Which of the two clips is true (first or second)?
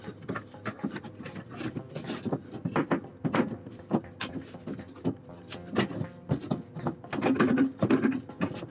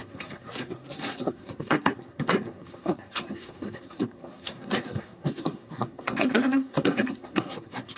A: first